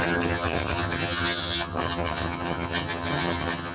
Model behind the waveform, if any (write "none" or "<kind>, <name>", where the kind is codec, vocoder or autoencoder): vocoder, HiFi-GAN